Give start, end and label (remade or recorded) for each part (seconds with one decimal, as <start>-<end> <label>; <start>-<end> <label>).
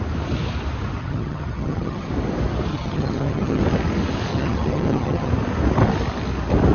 0.0-1.0 recorded; 1.0-2.1 remade; 2.1-2.7 recorded; 2.7-3.6 remade; 3.6-4.3 recorded; 4.3-5.3 remade; 5.3-6.7 recorded